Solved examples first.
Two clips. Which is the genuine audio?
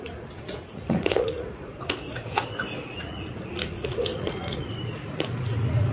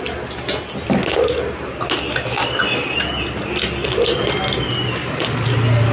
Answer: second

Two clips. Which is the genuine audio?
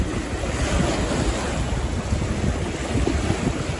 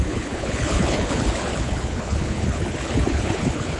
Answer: first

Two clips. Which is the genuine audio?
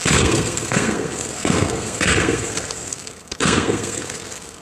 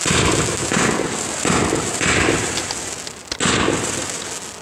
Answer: second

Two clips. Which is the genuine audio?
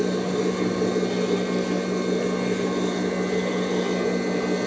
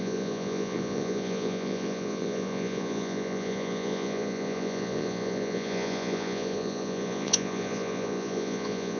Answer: first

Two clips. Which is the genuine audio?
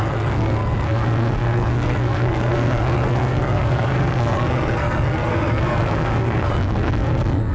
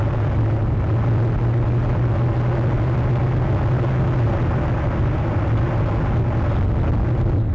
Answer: second